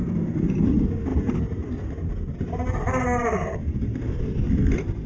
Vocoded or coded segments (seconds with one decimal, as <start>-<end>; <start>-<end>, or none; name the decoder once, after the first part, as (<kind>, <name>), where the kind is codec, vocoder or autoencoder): none